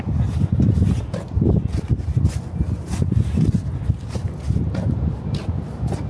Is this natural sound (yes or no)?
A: yes